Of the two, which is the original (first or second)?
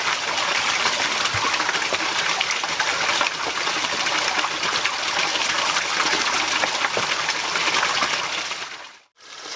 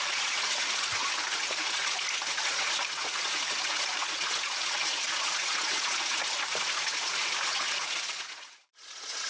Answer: first